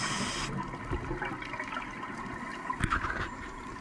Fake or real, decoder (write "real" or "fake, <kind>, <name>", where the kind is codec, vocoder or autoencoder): real